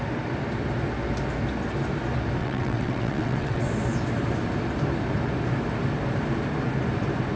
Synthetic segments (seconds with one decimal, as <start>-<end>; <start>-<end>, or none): 2.4-3.7